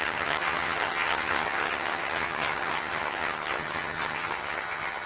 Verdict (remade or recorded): remade